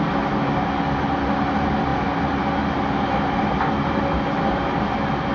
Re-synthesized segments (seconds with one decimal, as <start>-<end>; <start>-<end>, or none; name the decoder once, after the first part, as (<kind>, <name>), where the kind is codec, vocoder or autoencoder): none